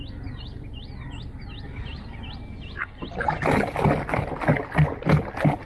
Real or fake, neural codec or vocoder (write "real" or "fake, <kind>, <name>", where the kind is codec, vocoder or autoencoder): real